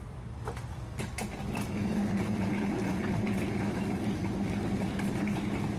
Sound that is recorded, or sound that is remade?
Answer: recorded